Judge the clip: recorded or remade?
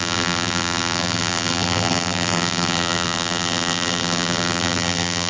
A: remade